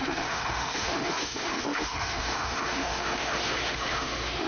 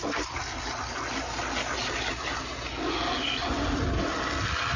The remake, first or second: first